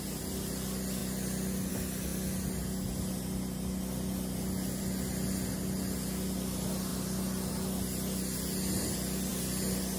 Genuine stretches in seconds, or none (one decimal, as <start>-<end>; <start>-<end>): 0.0-10.0